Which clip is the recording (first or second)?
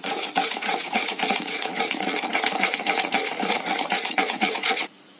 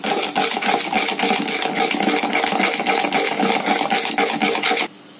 second